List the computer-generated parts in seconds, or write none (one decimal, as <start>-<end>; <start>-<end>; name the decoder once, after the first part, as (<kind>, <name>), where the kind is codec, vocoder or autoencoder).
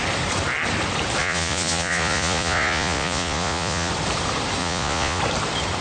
1.2-3.9 (vocoder, Vocos); 4.6-5.2